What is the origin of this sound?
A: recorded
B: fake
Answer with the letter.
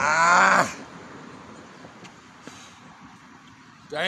B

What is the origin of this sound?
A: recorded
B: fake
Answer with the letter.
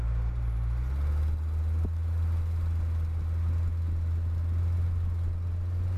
A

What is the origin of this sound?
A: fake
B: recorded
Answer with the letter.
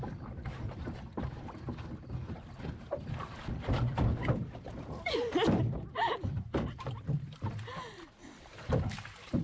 A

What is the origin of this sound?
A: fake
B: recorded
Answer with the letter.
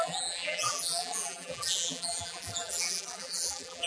A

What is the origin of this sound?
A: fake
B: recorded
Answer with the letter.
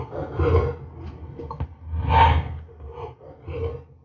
B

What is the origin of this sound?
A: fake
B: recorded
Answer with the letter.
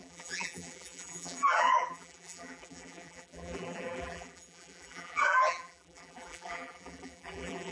A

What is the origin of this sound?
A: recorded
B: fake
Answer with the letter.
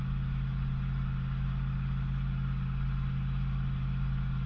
A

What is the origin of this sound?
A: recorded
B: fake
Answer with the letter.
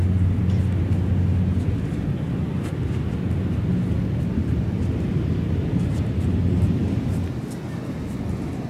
A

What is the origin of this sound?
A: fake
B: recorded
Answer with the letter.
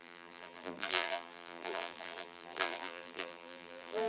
A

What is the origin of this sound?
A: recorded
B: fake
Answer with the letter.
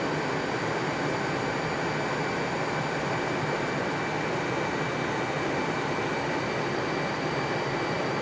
A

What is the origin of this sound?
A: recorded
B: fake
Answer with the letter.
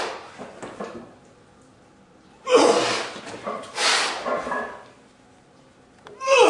A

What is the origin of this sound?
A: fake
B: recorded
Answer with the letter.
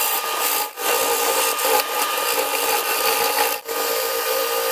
A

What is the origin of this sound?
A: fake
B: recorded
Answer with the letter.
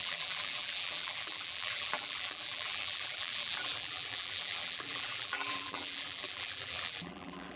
A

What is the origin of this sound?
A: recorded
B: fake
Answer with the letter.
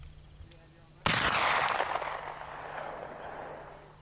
A